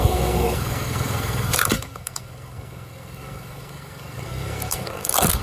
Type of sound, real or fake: fake